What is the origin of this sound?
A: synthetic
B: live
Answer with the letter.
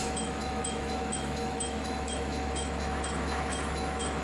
A